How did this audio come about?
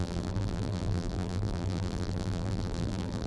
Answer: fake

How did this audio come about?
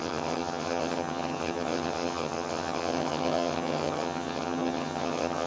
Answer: fake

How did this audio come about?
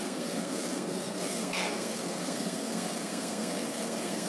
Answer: fake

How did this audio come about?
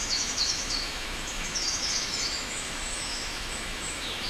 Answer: fake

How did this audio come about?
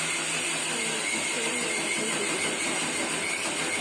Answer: real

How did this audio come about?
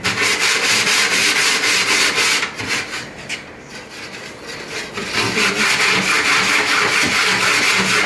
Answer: real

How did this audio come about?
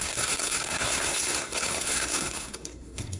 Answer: fake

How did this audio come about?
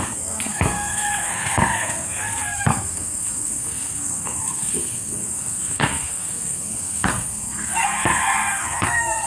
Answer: fake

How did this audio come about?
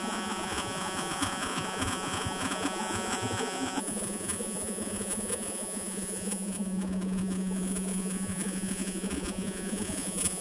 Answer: fake